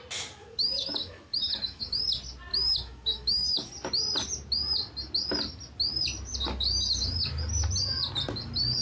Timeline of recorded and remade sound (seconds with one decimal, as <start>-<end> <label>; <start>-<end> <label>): 0.0-0.4 recorded; 0.4-2.0 remade; 2.0-2.5 recorded; 2.5-3.7 remade; 3.7-8.8 recorded